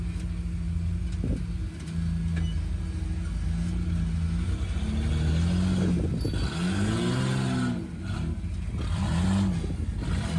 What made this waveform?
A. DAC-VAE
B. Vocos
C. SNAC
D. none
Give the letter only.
D